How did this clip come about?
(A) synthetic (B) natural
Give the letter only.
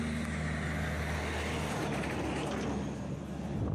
B